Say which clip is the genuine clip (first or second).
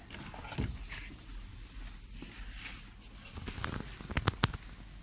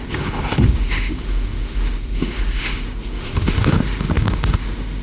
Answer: first